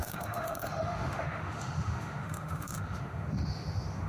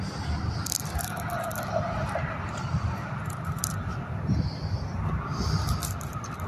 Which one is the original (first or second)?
second